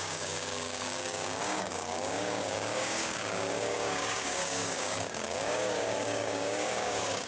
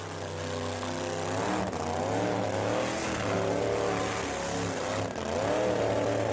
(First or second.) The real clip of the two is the second